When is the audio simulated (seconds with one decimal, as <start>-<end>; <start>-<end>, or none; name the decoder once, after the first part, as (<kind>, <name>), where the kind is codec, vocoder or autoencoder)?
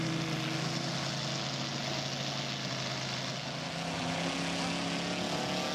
none